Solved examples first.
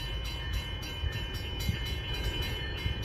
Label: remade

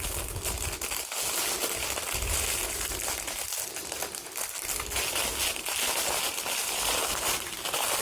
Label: recorded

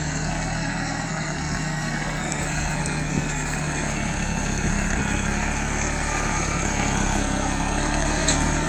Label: remade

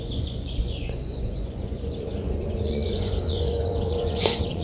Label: remade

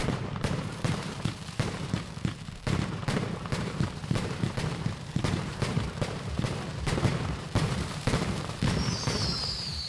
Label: remade